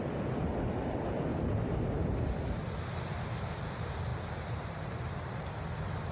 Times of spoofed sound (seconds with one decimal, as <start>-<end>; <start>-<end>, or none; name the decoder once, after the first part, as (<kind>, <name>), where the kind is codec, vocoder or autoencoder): 1.3-2.4 (vocoder, BigVGAN v2); 4.1-5.4